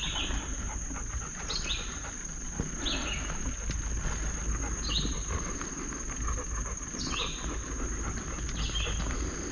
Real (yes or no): yes